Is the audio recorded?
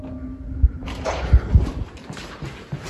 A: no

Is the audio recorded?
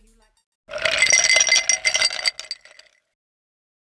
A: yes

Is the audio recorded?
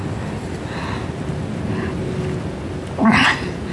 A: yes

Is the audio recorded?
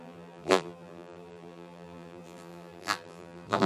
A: no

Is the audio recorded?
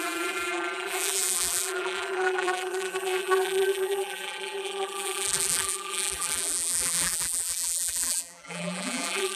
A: no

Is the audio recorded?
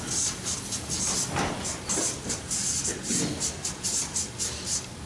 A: yes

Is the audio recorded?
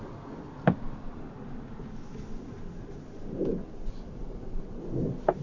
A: yes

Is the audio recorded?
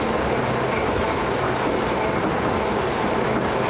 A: yes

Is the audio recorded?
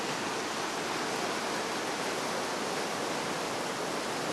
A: yes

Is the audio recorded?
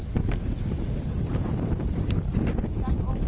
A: no